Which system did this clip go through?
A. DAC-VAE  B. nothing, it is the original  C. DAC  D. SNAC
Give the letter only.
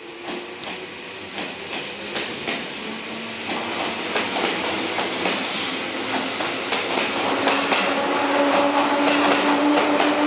B